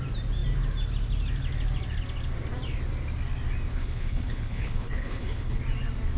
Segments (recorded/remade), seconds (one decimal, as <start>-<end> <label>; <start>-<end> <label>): 0.0-3.7 recorded; 3.7-5.6 remade; 5.6-6.2 recorded